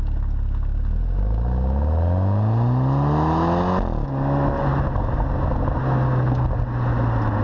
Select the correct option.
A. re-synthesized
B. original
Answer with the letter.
B